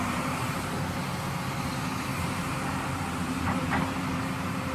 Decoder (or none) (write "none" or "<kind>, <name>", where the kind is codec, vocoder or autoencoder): vocoder, BigVGAN v2